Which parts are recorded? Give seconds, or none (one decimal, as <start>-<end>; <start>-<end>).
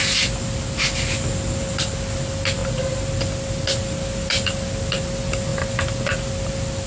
0.0-6.9